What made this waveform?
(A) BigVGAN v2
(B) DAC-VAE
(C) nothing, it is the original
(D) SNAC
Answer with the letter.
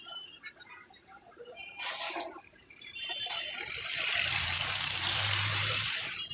A